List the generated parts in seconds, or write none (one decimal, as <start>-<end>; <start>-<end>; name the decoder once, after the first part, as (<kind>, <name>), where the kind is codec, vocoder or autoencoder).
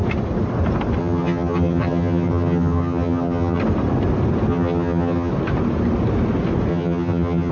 1.0-3.6 (vocoder, HiFi-GAN); 4.5-5.3; 6.7-7.5